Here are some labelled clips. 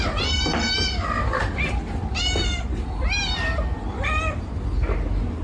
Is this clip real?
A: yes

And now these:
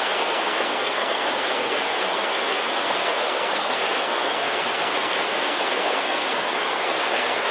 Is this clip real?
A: no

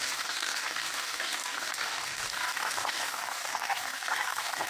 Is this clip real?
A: no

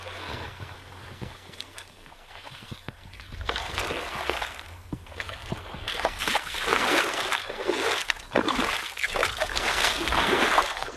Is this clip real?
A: no